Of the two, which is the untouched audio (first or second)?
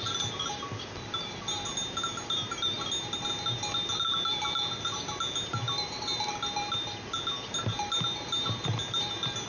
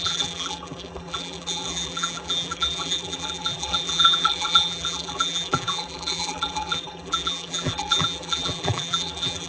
first